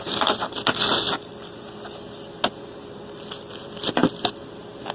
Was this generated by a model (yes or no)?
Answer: no